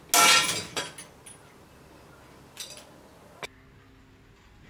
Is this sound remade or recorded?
recorded